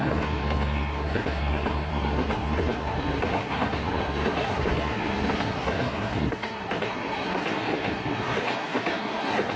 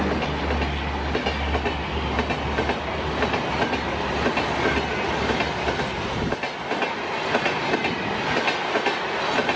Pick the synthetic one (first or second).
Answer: first